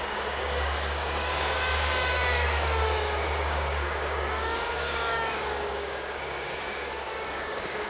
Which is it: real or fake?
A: fake